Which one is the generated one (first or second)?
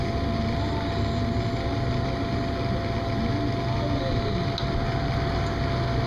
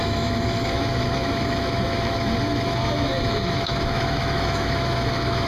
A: second